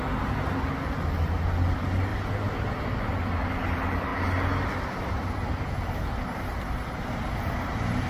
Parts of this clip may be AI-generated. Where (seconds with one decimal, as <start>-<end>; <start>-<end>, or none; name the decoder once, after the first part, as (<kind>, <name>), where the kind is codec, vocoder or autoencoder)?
none